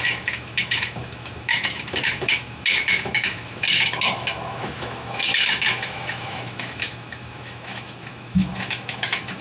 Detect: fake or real fake